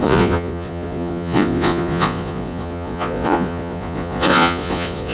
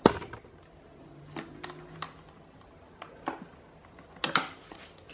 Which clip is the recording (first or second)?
second